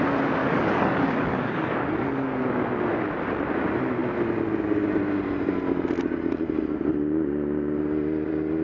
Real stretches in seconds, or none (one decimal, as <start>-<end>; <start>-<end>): 0.0-0.4; 2.4-8.6